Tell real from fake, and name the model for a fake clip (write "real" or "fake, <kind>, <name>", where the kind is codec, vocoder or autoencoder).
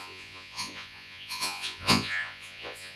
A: fake, vocoder, Vocos